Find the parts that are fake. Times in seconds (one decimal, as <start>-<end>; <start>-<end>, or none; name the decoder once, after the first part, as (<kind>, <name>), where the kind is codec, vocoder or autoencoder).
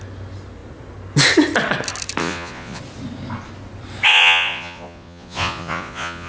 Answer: 2.2-2.8 (vocoder, Vocos); 4.1-6.3